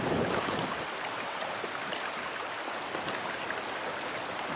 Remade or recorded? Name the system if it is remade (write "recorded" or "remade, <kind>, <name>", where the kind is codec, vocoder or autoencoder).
recorded